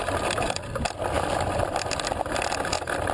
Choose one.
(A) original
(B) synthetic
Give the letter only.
A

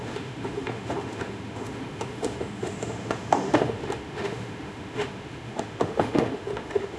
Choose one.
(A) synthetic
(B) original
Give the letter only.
A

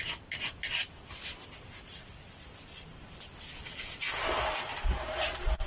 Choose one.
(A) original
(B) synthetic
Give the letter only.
A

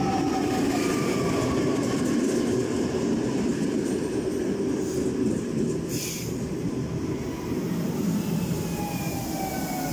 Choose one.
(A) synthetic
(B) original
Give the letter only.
B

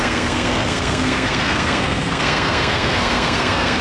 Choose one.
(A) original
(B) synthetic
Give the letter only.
B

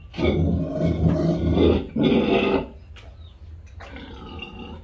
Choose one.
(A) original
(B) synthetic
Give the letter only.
A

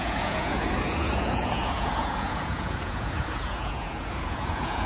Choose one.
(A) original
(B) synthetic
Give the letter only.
B